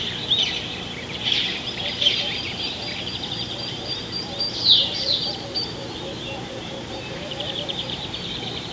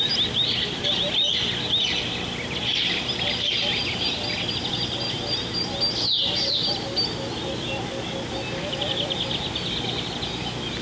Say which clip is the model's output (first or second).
first